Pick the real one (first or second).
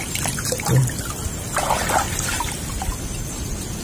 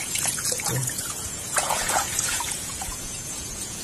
first